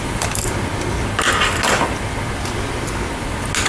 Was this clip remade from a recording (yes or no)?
no